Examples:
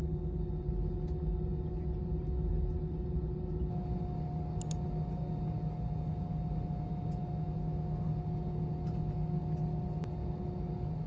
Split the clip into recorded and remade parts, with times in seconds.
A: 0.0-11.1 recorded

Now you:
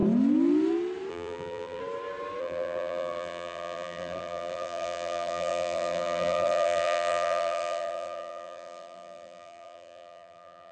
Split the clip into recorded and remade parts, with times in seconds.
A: 0.0-1.1 recorded; 1.1-1.8 remade; 1.8-2.4 recorded; 2.4-10.7 remade

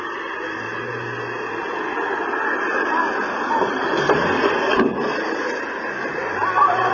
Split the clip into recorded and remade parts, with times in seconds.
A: 0.0-2.6 recorded; 2.6-6.9 remade

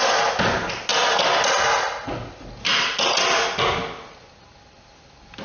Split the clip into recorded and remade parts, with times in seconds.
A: 0.0-5.4 recorded

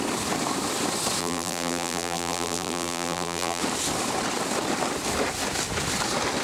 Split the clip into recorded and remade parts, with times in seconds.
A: 0.0-1.2 recorded; 1.2-3.6 remade; 3.6-6.4 recorded

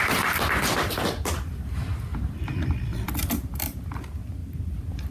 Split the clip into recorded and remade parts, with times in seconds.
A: 0.0-2.1 recorded; 2.1-3.2 remade; 3.2-5.1 recorded